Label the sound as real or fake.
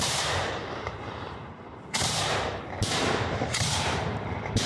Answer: fake